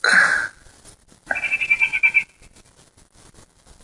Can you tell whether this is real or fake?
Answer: real